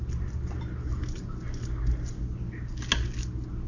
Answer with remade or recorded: recorded